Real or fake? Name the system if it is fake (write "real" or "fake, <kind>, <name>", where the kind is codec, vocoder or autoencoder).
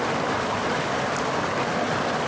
real